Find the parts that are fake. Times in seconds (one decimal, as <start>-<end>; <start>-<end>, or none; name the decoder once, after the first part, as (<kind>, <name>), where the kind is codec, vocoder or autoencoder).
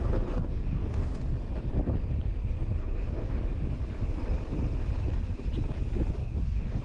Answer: 0.0-1.2 (codec, DAC); 2.8-3.4; 6.2-6.8